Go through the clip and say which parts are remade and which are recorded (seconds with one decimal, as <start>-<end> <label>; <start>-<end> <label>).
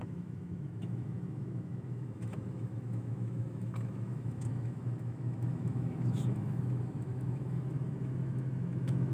0.0-9.1 remade